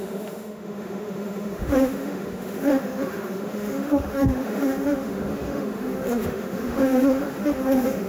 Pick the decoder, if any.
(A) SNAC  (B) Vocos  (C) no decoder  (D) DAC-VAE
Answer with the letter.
D